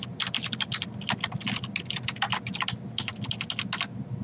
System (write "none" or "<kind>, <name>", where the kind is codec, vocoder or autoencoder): none